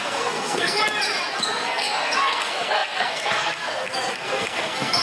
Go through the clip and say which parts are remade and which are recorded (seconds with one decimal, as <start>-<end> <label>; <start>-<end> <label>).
0.0-0.8 remade; 0.8-1.4 recorded; 1.4-5.0 remade